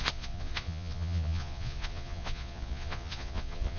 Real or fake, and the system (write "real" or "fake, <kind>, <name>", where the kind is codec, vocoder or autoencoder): fake, vocoder, Vocos